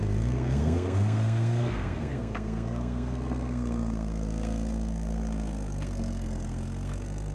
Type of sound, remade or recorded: remade